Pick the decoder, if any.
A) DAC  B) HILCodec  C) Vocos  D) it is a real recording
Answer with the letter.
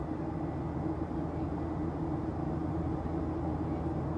D